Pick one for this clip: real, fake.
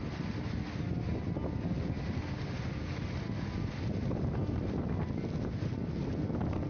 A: real